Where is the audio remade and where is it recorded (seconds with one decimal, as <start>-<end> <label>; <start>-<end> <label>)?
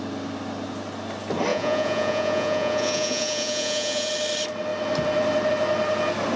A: 0.0-1.5 recorded; 1.5-4.1 remade; 4.1-6.4 recorded